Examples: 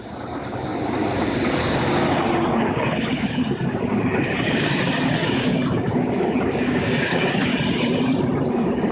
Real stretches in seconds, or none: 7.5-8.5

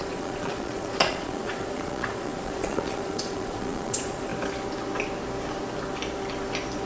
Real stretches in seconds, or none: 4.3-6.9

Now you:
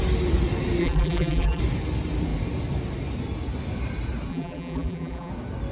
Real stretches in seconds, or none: 0.0-0.8; 1.6-4.3; 5.3-5.7

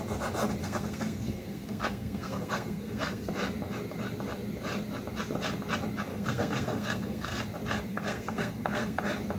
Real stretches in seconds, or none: 0.0-0.6; 3.3-6.1; 7.4-7.9; 9.0-9.4

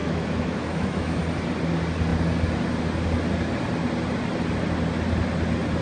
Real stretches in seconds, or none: 1.2-5.8